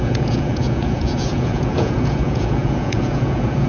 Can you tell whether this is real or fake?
fake